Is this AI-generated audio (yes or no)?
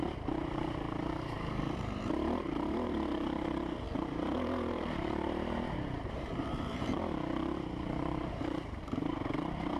yes